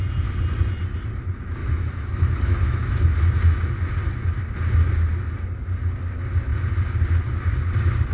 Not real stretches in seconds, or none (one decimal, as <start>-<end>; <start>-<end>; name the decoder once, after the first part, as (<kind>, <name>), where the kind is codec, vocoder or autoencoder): 1.6-2.9 (autoencoder, DAC-VAE)